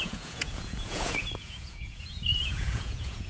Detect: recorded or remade remade